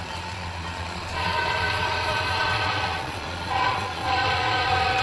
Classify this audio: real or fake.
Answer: fake